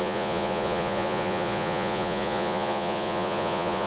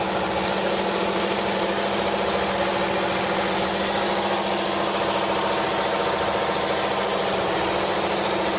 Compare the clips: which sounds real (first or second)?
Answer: second